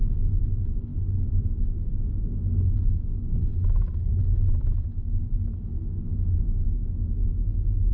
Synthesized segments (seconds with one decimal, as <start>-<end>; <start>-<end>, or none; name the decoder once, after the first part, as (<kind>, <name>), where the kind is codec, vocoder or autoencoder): 0.0-0.9 (autoencoder, DAC-VAE); 2.9-3.5; 4.2-5.7; 6.9-7.9